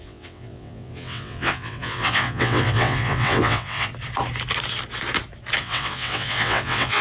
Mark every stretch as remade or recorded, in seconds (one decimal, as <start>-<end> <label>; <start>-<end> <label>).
0.0-3.9 remade; 3.9-5.6 recorded; 5.6-7.0 remade